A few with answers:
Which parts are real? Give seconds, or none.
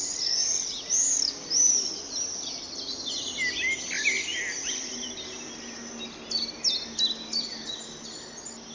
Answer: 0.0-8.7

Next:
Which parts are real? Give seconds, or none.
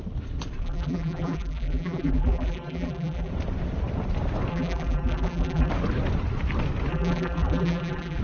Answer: 0.0-0.6; 3.3-4.5; 5.7-6.9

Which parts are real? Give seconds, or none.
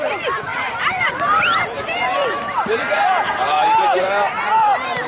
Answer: none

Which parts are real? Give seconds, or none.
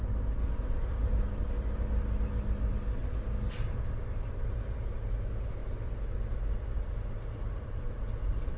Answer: 0.0-0.4; 1.4-8.6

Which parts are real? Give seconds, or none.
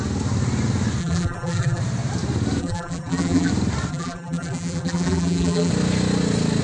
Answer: 0.0-1.0; 1.8-2.6; 3.5-3.9; 5.7-6.6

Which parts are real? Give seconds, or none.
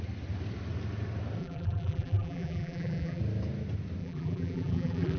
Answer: 0.0-1.4; 3.2-4.0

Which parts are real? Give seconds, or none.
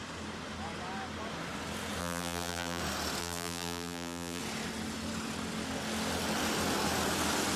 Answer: 0.0-2.0; 2.8-3.2; 4.4-7.6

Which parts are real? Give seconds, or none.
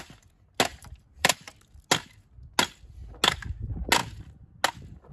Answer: 0.0-0.7; 1.5-5.1